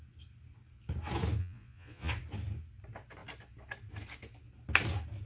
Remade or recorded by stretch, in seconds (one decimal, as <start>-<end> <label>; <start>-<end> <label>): 0.0-1.4 recorded; 1.4-2.1 remade; 2.1-5.3 recorded